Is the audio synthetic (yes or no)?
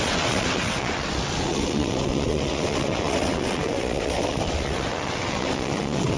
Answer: yes